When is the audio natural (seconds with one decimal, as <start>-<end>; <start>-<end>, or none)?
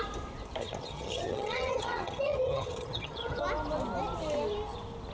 0.0-0.6; 3.4-5.1